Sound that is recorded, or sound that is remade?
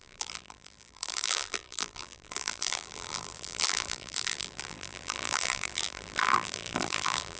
remade